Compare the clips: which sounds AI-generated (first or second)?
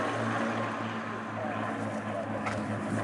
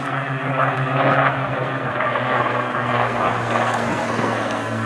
second